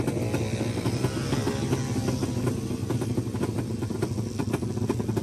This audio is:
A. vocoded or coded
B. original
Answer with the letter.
B